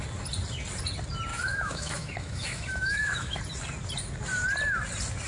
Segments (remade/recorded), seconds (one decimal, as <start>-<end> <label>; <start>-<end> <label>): 0.0-1.3 recorded; 1.3-3.4 remade; 3.4-5.3 recorded